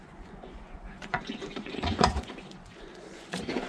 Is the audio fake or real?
fake